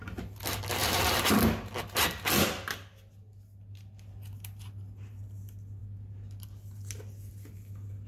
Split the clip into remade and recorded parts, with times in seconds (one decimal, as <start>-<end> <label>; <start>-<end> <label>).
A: 0.0-8.1 recorded